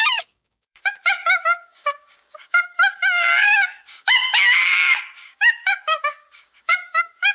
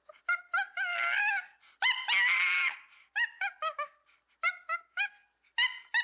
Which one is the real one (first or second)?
second